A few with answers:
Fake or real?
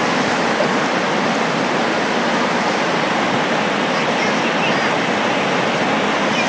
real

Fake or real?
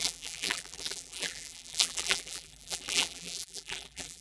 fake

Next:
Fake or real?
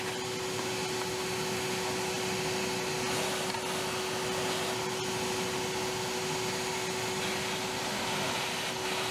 real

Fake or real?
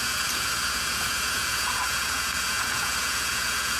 fake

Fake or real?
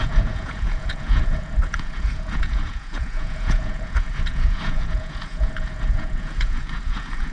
fake